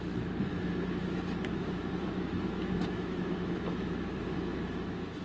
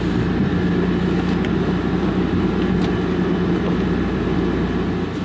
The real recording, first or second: second